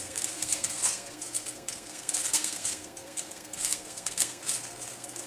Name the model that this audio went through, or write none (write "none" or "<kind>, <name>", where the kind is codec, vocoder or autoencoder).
codec, SNAC